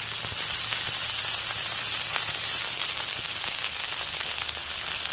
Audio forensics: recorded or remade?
recorded